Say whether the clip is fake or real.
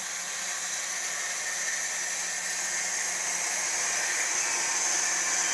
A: real